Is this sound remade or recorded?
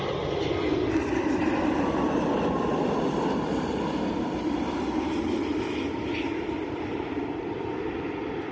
recorded